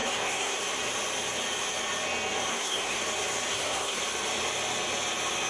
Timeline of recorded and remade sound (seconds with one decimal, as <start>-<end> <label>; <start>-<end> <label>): 0.0-0.6 remade; 0.6-2.5 recorded; 2.5-3.0 remade; 3.0-3.5 recorded; 3.5-4.0 remade; 4.0-5.5 recorded